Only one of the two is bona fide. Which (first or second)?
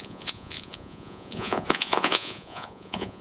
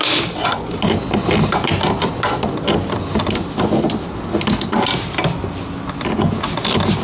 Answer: second